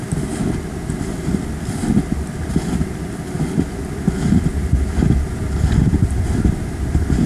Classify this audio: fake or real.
real